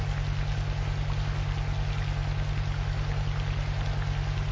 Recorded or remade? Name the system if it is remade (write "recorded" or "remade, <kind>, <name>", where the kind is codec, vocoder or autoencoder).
recorded